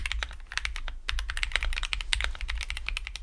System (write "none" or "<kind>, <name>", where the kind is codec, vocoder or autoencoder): none